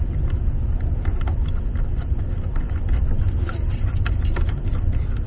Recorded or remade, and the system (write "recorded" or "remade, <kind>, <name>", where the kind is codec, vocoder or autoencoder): recorded